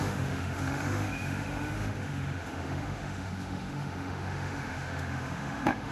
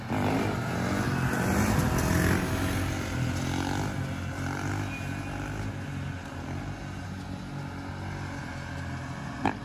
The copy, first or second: first